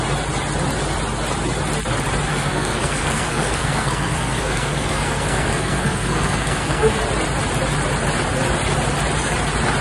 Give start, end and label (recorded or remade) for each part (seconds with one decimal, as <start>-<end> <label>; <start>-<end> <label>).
0.0-2.3 recorded; 2.3-7.0 remade; 7.0-9.8 recorded